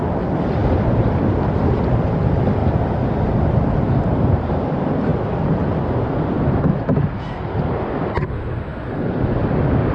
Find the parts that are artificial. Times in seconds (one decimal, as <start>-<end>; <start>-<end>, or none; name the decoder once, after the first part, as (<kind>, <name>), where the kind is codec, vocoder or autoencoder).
none